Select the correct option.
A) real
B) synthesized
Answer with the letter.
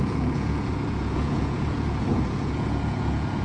B